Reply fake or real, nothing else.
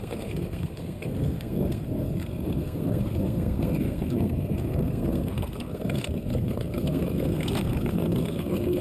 fake